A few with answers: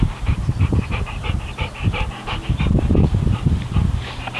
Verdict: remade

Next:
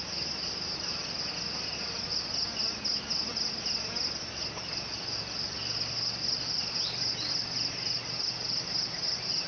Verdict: recorded